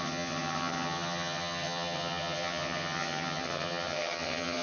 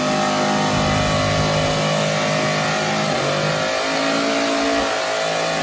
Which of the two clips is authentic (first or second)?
second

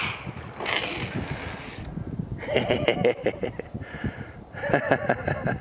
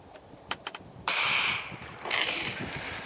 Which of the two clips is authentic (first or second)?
first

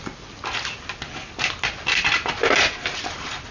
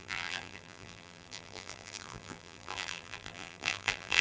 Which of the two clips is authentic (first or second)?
first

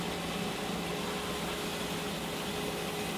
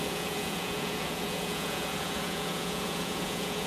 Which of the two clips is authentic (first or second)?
first